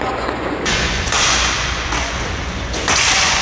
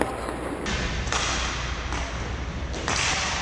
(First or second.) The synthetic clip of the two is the first